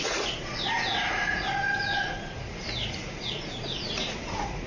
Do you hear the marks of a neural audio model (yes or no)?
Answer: yes